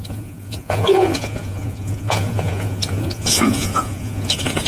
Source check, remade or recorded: remade